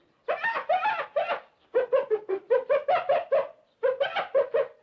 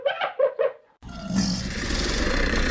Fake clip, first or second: second